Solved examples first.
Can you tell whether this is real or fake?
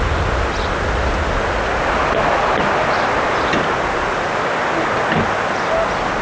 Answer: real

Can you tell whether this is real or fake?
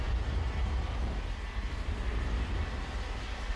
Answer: real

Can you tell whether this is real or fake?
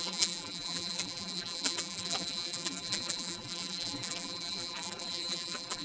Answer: fake